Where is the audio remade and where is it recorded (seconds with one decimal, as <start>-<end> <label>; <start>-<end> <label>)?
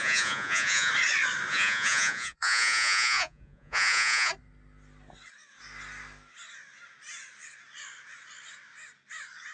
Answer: 0.0-0.9 remade; 0.9-1.5 recorded; 1.5-4.3 remade; 4.3-9.5 recorded